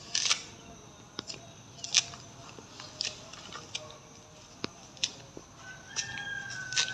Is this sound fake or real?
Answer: real